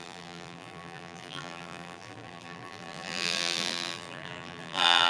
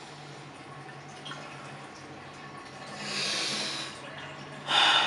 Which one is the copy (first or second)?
first